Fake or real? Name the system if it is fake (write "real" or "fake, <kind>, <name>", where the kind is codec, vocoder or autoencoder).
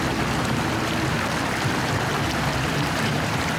real